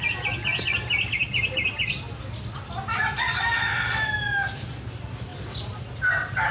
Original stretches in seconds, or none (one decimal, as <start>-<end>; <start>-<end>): 0.0-6.5